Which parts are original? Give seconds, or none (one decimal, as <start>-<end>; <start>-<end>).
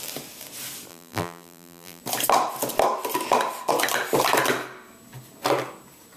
0.0-0.9; 2.0-6.2